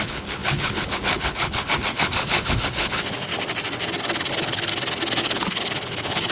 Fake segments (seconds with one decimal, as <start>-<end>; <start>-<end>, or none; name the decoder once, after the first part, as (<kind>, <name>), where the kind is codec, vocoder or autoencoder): 0.0-3.3 (codec, HILCodec); 4.3-4.7; 5.2-6.3